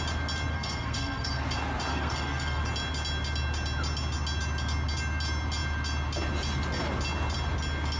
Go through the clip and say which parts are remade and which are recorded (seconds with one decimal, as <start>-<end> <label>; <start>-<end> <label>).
0.0-0.5 recorded; 0.5-1.4 remade; 1.4-1.9 recorded; 1.9-2.6 remade; 2.6-8.0 recorded